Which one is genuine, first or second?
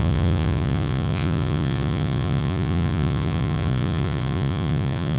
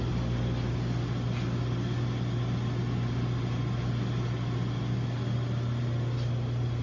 second